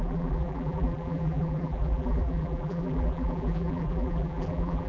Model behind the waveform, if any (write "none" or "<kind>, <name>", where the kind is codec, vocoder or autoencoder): vocoder, BigVGAN v2